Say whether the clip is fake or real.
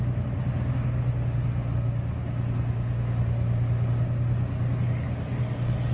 real